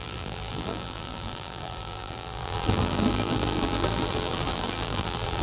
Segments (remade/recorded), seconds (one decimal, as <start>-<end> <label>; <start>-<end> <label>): 0.0-5.4 remade